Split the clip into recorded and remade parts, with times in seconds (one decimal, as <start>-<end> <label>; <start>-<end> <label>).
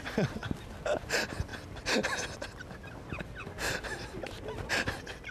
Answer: 0.0-5.3 recorded